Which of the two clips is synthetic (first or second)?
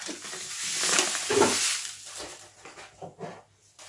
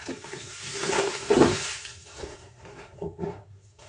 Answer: second